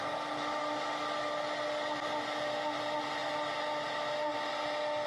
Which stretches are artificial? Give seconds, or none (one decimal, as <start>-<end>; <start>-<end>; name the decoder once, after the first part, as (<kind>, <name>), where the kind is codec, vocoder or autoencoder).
none